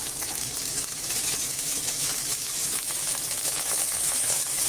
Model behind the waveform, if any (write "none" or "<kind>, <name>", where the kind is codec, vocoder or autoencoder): autoencoder, DAC-VAE